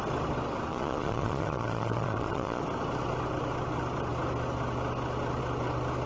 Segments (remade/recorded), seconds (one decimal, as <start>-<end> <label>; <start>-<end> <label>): 0.0-0.7 recorded; 0.7-2.6 remade; 2.6-6.1 recorded